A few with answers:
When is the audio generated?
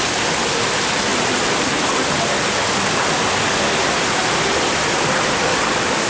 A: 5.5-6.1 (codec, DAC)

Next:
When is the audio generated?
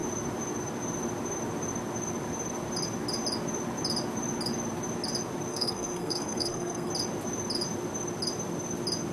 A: 5.5-6.9 (codec, SNAC)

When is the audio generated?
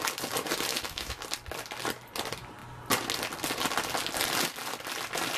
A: 0.7-1.2 (autoencoder, DAC-VAE)